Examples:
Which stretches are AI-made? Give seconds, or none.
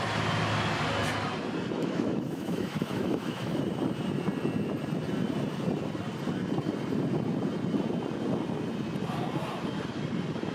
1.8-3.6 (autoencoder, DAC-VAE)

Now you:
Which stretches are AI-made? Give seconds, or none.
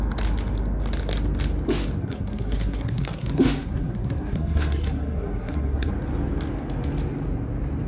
2.0-5.9 (codec, SNAC)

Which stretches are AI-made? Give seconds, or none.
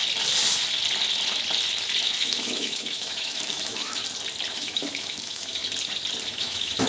2.0-4.0 (autoencoder, DAC-VAE); 4.5-5.6; 6.3-6.9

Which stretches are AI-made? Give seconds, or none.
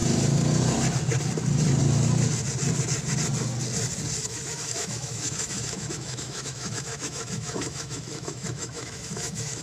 4.2-9.6 (autoencoder, DAC-VAE)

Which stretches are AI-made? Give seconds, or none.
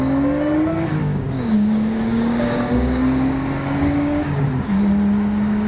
1.0-4.4 (codec, DAC)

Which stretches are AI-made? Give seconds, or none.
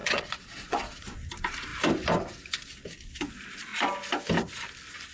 0.0-1.0 (vocoder, Vocos)